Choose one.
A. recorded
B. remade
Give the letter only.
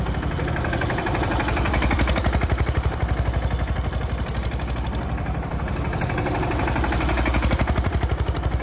B